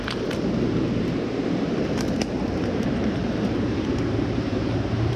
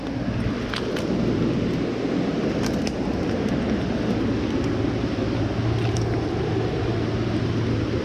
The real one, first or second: second